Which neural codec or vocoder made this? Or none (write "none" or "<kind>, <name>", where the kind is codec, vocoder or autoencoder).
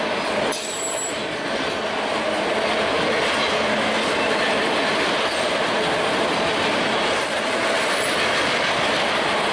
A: none